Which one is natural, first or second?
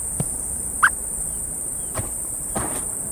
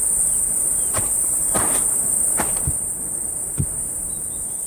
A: second